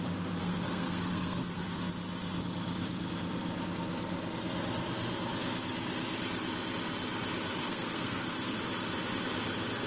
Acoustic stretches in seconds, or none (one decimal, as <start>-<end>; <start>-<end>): 0.0-0.4; 1.8-7.6; 8.6-9.9